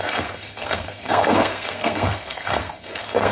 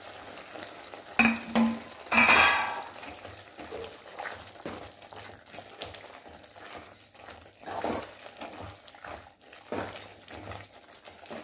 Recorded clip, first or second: second